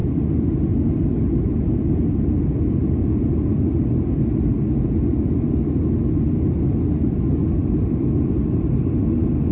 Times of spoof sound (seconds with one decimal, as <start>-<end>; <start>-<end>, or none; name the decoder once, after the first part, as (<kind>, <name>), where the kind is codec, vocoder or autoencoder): none